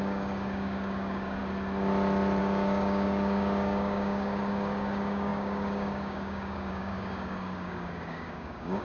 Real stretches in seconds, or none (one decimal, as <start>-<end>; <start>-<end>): 1.4-2.4